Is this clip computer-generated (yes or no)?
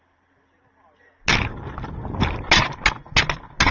no